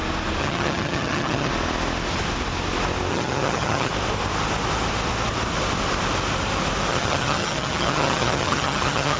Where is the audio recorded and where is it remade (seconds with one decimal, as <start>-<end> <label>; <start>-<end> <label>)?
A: 0.0-0.4 recorded; 0.4-1.5 remade; 1.5-3.1 recorded; 3.1-3.9 remade; 3.9-6.9 recorded; 6.9-9.2 remade